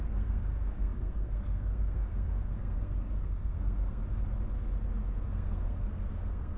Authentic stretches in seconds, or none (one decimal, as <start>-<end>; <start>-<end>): 4.0-5.3